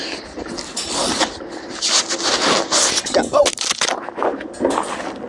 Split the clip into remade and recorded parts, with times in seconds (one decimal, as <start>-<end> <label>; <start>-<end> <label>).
0.0-5.3 recorded